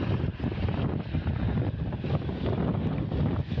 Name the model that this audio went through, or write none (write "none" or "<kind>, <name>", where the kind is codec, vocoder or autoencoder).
none